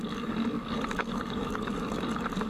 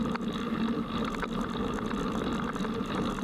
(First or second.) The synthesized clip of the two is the first